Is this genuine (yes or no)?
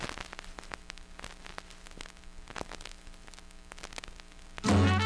yes